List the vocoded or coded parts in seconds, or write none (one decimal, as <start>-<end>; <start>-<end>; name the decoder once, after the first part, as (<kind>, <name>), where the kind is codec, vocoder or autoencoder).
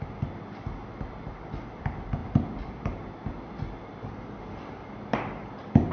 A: none